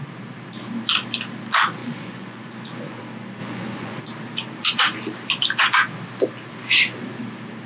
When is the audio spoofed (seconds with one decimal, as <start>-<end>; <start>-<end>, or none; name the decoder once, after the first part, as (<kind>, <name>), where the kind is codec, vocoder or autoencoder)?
1.8-3.0 (vocoder, Vocos); 3.4-4.0